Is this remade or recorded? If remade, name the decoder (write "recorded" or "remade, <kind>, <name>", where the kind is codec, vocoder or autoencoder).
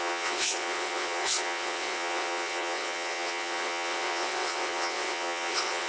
remade, vocoder, WaveNeXt